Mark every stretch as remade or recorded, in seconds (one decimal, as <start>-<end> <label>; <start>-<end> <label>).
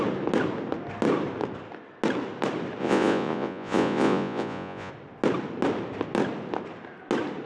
0.0-2.8 recorded; 2.8-4.9 remade; 4.9-7.5 recorded